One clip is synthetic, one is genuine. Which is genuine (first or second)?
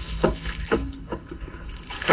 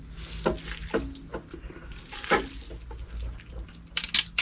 second